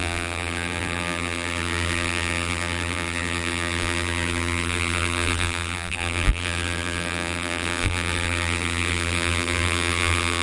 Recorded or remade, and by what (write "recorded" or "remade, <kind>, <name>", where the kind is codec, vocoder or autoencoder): remade, vocoder, BigVGAN v2